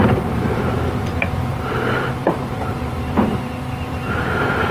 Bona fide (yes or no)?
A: no